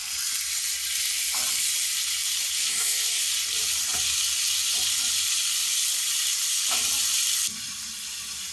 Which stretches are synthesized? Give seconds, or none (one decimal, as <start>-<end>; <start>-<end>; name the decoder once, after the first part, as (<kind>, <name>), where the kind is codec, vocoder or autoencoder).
2.6-3.2 (codec, SNAC)